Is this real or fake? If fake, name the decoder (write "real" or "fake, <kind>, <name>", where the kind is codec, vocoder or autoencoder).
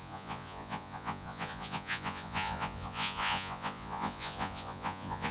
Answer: fake, vocoder, Vocos